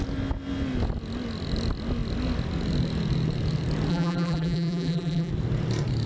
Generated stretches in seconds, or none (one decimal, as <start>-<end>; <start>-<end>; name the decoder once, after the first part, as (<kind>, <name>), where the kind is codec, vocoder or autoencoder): 3.9-5.3 (vocoder, BigVGAN v2)